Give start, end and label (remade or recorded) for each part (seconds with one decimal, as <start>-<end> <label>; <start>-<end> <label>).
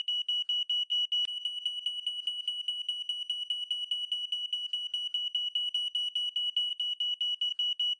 0.0-8.0 recorded